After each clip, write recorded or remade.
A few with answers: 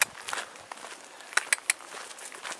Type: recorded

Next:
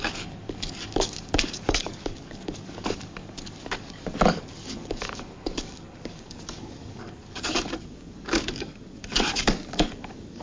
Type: remade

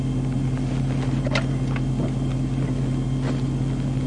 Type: recorded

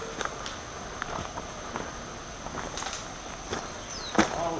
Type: recorded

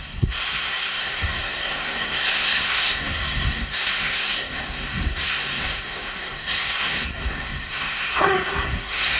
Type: remade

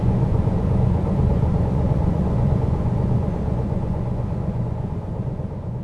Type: remade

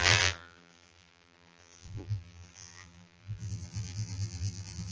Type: remade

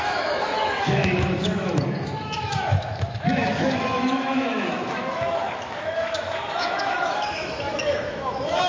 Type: remade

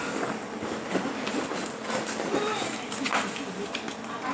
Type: recorded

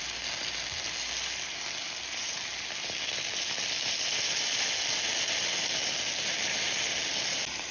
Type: recorded